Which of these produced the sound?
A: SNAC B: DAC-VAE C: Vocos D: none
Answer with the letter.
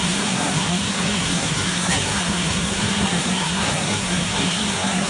A